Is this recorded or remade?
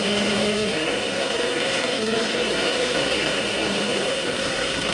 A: remade